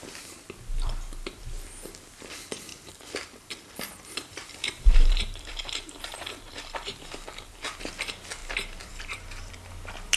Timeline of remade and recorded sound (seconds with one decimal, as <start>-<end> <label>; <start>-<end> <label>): 0.0-2.7 recorded; 2.7-7.9 remade; 7.9-8.4 recorded; 8.4-9.5 remade; 9.5-10.2 recorded